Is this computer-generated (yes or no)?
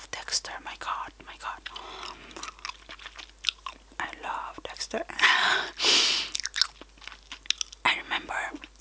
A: no